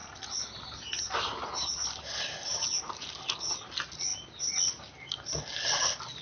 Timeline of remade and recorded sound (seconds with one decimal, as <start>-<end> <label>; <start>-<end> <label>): 0.0-6.2 recorded